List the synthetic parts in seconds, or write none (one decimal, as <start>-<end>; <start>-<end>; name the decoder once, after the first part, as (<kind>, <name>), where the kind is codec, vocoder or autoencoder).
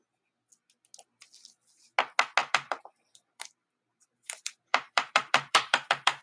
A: 2.4-6.2 (vocoder, BigVGAN v2)